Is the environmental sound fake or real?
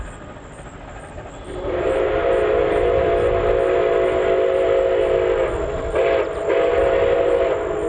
real